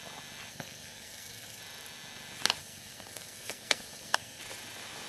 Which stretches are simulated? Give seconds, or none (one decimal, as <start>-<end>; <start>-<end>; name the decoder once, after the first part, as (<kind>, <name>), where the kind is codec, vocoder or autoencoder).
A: 0.5-1.6 (codec, SNAC); 2.6-4.4